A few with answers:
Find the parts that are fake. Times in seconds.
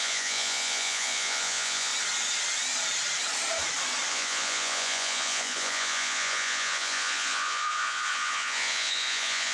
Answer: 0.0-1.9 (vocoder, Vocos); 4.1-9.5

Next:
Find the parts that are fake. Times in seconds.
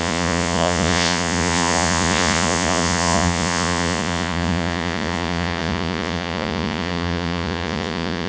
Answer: 0.0-8.3 (vocoder, Vocos)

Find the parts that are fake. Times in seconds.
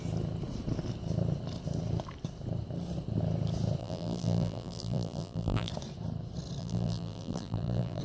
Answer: 3.8-5.7 (vocoder, BigVGAN v2); 6.6-8.0